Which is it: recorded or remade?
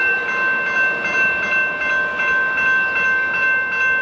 recorded